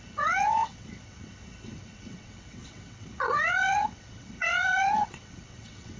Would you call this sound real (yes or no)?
no